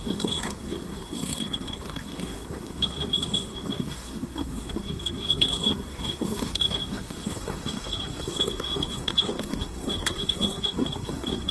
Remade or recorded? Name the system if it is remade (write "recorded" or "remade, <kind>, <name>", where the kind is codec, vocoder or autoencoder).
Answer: remade, codec, SNAC